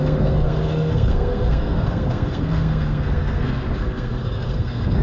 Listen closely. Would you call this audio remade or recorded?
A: remade